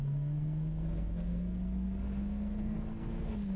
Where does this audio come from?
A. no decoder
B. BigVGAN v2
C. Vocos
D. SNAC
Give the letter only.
D